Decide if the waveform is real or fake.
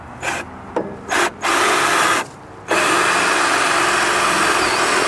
real